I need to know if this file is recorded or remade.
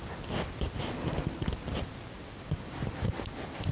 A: recorded